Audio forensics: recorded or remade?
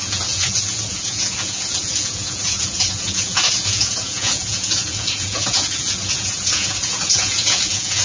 remade